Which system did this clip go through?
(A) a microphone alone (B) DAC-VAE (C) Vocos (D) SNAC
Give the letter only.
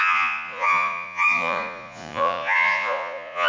C